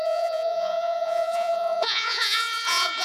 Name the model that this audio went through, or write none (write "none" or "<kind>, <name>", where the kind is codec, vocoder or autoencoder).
vocoder, Vocos